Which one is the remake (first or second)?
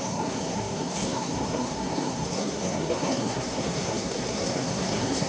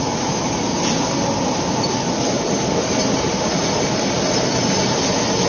first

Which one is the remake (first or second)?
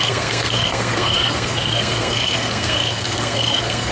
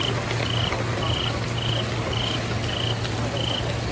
first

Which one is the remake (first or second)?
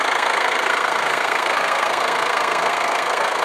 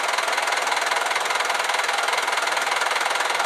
first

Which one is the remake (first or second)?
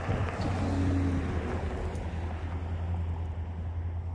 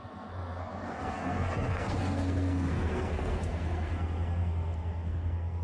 second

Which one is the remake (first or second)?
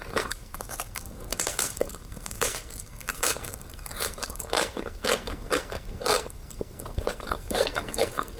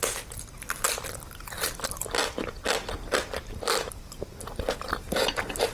first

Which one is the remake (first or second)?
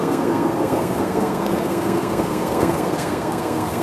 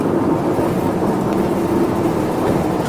first